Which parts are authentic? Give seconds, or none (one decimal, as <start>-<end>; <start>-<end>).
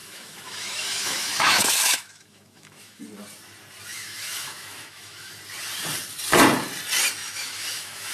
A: 3.0-3.9; 5.3-7.2